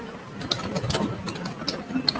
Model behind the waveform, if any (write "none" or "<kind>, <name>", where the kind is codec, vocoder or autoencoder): none